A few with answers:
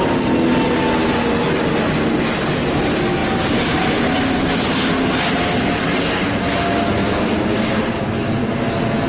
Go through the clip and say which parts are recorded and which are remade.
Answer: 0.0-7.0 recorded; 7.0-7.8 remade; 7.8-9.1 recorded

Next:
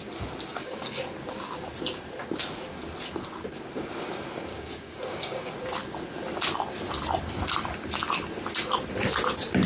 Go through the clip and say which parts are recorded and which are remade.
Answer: 0.0-0.5 recorded; 0.5-1.0 remade; 1.0-4.5 recorded; 4.5-5.5 remade; 5.5-9.7 recorded